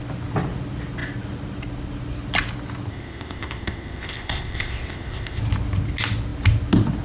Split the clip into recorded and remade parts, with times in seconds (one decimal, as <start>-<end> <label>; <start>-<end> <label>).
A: 0.0-2.9 recorded; 2.9-5.4 remade; 5.4-7.0 recorded